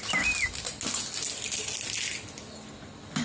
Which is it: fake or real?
real